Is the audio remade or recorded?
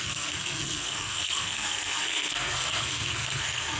remade